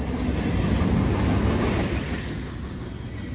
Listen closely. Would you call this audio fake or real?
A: real